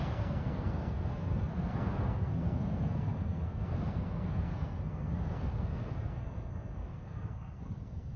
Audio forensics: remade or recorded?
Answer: remade